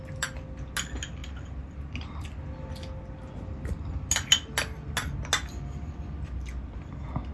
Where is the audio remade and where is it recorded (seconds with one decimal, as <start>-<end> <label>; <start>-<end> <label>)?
0.0-7.3 recorded